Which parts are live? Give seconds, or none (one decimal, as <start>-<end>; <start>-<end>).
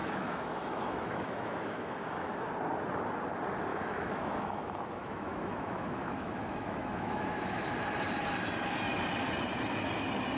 2.3-3.7; 7.7-10.4